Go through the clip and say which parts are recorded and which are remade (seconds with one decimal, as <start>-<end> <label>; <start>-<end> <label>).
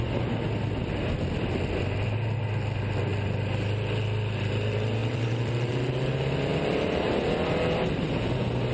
0.0-5.0 recorded; 5.0-5.7 remade; 5.7-6.5 recorded; 6.5-8.1 remade; 8.1-8.7 recorded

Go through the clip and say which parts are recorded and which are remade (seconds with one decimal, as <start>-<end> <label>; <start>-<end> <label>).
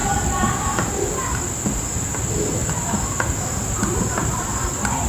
0.0-5.1 recorded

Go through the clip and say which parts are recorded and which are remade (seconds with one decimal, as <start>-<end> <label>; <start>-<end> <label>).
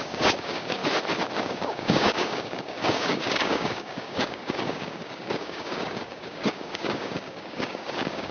0.0-0.8 remade; 0.8-1.4 recorded; 1.4-8.3 remade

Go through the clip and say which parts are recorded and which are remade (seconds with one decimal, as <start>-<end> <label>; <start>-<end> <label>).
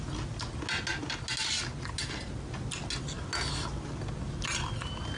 0.0-5.2 recorded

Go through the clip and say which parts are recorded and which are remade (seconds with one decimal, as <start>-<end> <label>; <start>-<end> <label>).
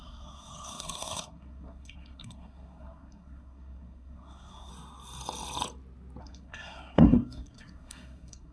0.0-4.7 remade; 4.7-6.2 recorded; 6.2-8.5 remade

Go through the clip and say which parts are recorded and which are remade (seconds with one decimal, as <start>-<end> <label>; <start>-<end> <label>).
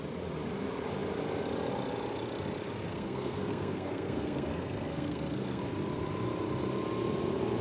0.0-2.9 recorded; 2.9-5.6 remade; 5.6-7.6 recorded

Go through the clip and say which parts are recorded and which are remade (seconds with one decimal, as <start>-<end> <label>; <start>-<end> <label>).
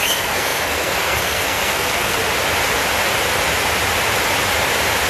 0.0-2.2 remade; 2.2-5.1 recorded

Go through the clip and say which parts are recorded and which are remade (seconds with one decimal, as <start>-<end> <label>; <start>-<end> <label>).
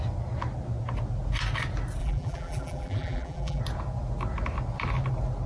0.0-2.0 recorded; 2.0-3.6 remade; 3.6-5.5 recorded